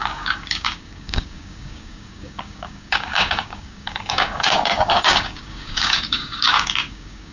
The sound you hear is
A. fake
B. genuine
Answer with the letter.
A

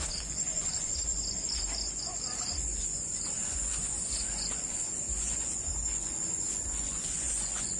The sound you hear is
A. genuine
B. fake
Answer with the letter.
B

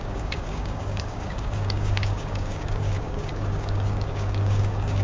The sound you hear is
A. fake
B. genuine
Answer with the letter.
A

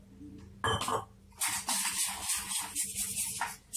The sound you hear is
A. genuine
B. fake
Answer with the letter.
A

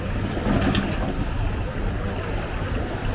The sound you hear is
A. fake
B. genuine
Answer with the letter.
B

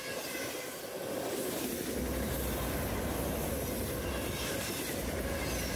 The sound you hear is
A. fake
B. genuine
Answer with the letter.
B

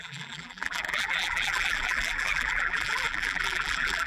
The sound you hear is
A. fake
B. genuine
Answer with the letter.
A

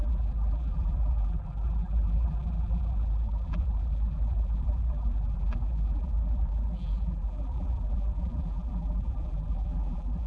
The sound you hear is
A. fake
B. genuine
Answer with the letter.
A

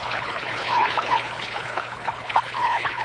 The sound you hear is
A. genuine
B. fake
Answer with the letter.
B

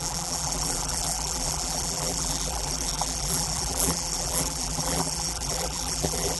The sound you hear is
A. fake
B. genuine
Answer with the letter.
A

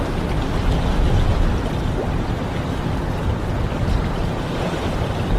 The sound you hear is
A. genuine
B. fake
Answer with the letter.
A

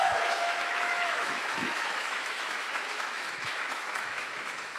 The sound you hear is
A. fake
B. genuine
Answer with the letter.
A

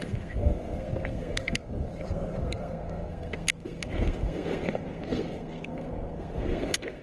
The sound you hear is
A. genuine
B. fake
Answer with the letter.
B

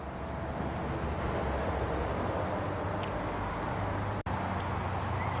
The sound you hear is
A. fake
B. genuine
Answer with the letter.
B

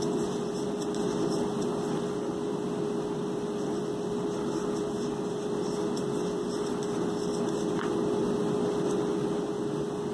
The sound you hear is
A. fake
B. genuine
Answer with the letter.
B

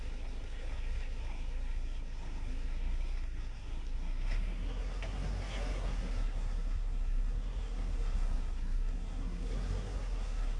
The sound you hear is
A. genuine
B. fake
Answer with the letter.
B